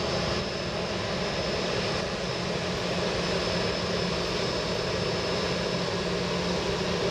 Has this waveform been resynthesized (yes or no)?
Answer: no